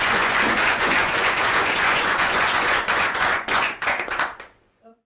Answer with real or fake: fake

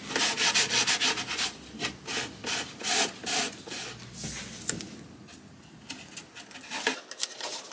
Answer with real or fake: real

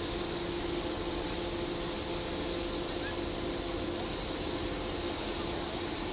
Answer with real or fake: real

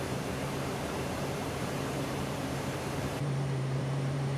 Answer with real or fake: fake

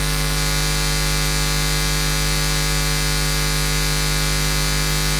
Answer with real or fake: real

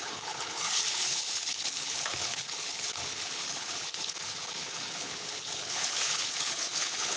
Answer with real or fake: fake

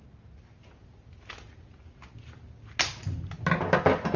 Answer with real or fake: real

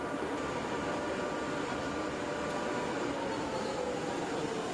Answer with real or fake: real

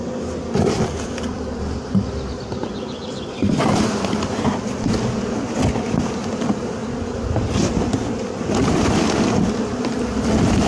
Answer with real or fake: real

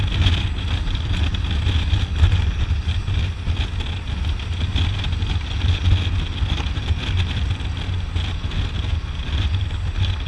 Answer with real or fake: real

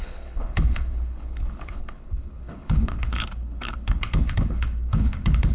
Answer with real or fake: fake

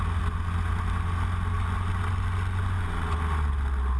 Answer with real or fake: real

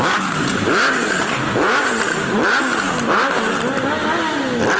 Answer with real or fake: real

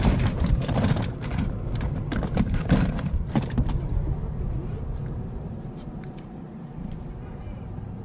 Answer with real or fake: fake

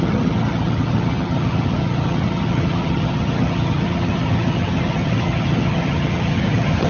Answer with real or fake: fake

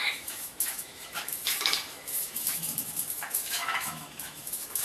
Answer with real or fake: fake